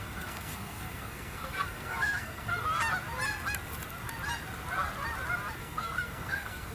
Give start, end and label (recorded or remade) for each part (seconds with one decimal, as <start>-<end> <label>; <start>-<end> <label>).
0.0-2.5 remade; 2.5-5.6 recorded; 5.6-6.7 remade